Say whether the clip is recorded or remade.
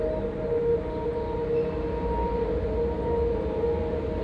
recorded